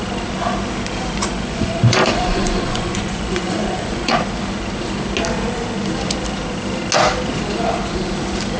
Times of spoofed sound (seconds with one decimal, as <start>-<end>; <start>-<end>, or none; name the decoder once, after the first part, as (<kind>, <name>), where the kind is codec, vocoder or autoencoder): 1.2-4.1 (vocoder, Vocos)